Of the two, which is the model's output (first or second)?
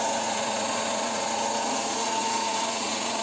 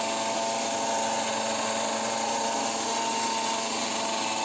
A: first